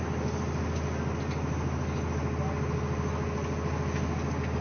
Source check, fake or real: real